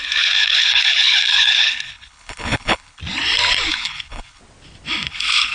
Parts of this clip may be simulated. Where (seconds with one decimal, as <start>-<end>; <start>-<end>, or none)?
0.0-3.0; 3.7-4.4; 5.1-5.5